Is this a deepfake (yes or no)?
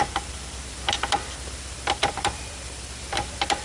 yes